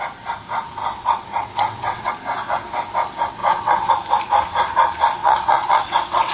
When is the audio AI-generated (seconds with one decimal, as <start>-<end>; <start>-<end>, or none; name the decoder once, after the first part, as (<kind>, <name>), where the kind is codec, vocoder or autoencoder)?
0.8-2.1 (vocoder, WaveNeXt); 3.4-3.9; 5.2-6.3